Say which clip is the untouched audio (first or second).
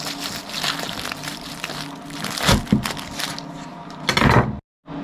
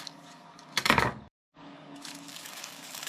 first